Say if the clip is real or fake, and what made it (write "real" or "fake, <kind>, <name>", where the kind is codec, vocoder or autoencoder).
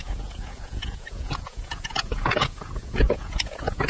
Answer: fake, vocoder, Vocos